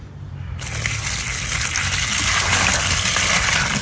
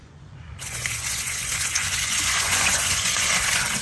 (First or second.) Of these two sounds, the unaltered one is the first